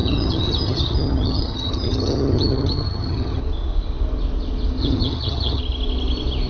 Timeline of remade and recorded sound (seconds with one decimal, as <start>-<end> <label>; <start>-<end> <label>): 0.0-3.4 remade; 3.4-4.8 recorded; 4.8-5.6 remade; 5.6-6.5 recorded